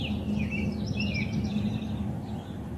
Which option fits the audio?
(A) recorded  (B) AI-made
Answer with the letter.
A